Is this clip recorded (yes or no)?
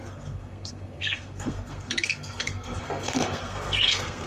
no